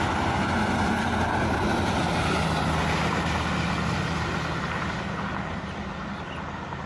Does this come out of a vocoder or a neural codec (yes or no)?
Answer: no